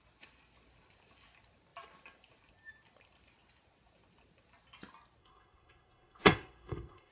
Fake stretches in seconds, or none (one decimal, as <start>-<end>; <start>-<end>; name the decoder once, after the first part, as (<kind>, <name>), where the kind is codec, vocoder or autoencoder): 5.2-7.1 (codec, SNAC)